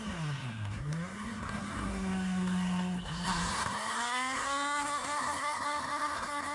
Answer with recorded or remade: remade